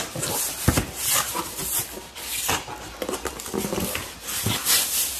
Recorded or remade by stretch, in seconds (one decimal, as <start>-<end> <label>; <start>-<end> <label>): 0.0-1.6 recorded; 1.6-2.3 remade; 2.3-5.2 recorded

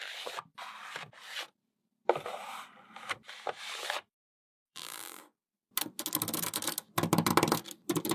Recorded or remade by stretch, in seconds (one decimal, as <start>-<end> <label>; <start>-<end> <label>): 0.0-4.7 recorded; 4.7-5.2 remade; 5.2-8.1 recorded